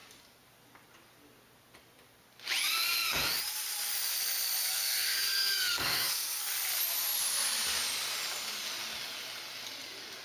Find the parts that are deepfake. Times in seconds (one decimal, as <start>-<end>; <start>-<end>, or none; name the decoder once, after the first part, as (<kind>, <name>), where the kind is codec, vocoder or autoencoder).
4.6-6.4 (codec, SNAC)